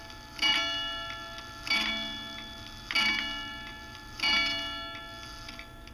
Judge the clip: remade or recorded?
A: recorded